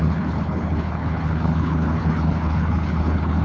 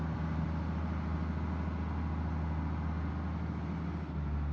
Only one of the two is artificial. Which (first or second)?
first